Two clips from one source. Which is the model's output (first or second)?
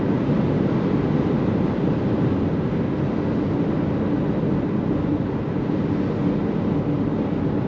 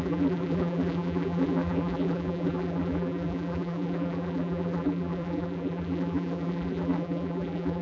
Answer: second